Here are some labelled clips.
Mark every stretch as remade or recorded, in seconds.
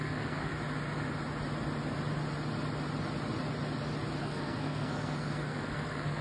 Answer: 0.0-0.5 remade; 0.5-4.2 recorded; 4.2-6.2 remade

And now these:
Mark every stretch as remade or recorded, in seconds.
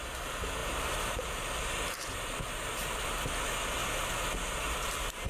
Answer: 0.0-0.6 recorded; 0.6-2.6 remade; 2.6-5.3 recorded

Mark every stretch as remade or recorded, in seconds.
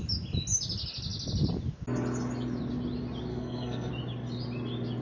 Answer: 0.0-3.3 recorded; 3.3-3.9 remade; 3.9-5.0 recorded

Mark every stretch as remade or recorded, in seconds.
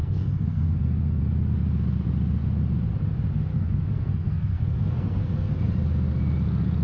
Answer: 0.0-1.2 remade; 1.2-3.5 recorded; 3.5-5.5 remade; 5.5-6.8 recorded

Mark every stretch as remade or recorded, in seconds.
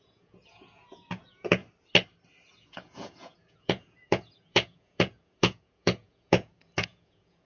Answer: 0.0-1.6 remade; 1.6-2.6 recorded; 2.6-7.5 remade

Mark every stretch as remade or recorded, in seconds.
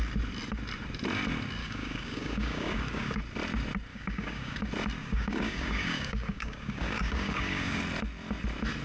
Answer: 0.0-1.6 recorded; 1.6-3.2 remade; 3.2-3.9 recorded; 3.9-4.6 remade; 4.6-5.0 recorded; 5.0-7.8 remade; 7.8-8.8 recorded